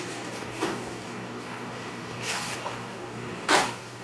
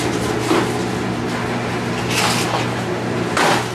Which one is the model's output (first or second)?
first